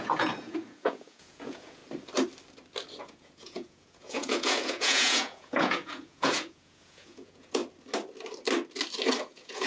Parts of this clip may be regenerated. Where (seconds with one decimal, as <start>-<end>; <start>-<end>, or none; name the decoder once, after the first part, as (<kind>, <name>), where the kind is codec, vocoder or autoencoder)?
0.0-1.8 (vocoder, Vocos); 3.0-7.6; 9.2-9.7